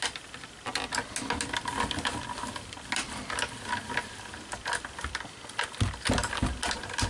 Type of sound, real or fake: real